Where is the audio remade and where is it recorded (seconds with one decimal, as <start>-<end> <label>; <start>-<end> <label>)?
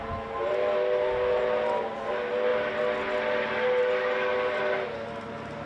0.0-5.7 recorded